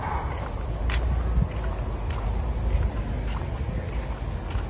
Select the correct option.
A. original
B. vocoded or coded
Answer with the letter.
A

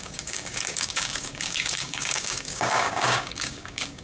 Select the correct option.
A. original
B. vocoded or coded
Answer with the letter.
B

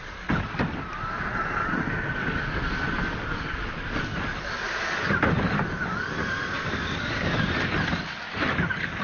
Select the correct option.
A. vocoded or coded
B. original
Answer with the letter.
B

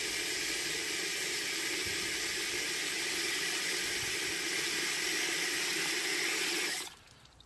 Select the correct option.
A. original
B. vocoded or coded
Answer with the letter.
A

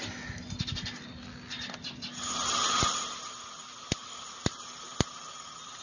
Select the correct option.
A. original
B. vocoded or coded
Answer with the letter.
A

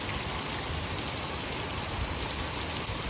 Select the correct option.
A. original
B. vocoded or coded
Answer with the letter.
A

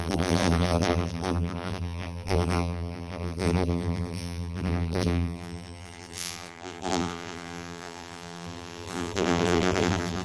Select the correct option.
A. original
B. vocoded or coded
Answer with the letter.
B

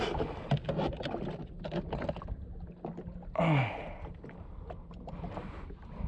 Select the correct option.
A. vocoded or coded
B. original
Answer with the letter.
B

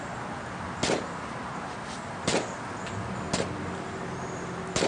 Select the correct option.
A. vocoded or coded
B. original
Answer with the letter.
B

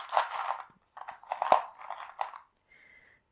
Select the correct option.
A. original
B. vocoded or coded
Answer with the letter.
A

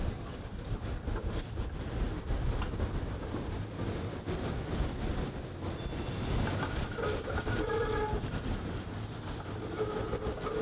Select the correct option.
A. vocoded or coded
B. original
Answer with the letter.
B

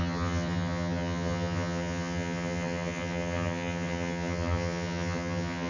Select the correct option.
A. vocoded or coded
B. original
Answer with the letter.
A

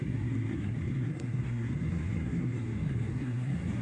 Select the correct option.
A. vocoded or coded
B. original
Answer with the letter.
A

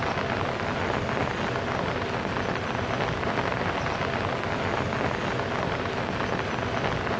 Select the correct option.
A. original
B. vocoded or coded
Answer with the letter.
A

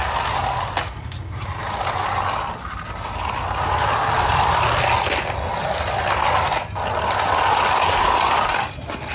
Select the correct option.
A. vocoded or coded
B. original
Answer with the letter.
B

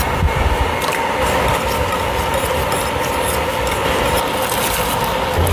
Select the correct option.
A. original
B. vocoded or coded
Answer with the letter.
A